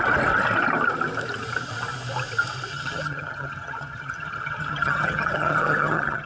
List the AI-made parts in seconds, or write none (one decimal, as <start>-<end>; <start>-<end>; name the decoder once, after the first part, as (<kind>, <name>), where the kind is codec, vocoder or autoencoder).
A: 2.7-6.3 (vocoder, HiFi-GAN)